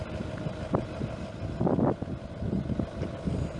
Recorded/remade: recorded